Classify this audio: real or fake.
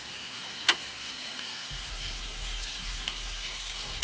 fake